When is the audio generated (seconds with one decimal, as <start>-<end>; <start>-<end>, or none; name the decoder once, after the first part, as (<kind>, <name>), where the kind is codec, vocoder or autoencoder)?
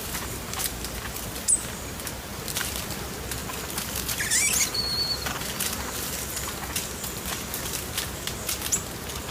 none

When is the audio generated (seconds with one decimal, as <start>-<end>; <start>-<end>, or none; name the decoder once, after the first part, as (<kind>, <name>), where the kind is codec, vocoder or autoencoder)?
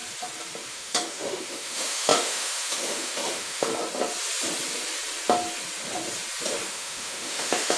0.7-3.7 (autoencoder, DAC-VAE); 6.7-7.8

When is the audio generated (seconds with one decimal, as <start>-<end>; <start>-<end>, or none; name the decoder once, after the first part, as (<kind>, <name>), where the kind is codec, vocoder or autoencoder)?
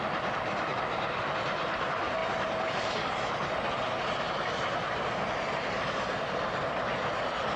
none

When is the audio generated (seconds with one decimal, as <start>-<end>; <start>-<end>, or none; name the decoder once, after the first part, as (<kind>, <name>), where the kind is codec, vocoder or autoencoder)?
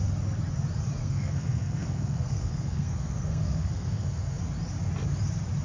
1.0-4.4 (codec, SNAC)